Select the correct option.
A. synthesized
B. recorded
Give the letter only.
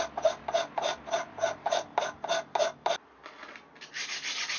B